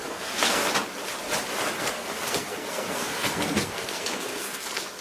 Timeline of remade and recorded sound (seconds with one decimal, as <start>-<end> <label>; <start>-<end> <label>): 0.0-0.6 remade; 0.6-1.8 recorded; 1.8-5.0 remade